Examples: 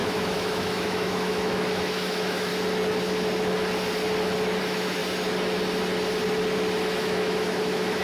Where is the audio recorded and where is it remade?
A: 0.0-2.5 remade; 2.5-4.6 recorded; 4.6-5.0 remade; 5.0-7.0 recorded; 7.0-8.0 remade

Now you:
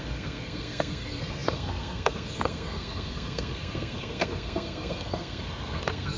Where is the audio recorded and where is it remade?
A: 0.0-6.2 remade

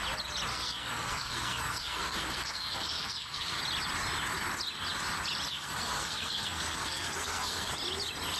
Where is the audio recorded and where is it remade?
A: 0.0-0.5 recorded; 0.5-3.6 remade; 3.6-5.5 recorded; 5.5-7.7 remade; 7.7-8.4 recorded